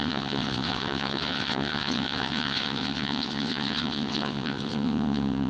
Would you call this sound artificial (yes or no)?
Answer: yes